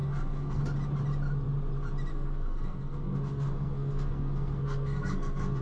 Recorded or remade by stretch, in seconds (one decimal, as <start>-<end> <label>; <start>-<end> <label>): 0.0-0.6 remade; 0.6-2.1 recorded; 2.1-5.6 remade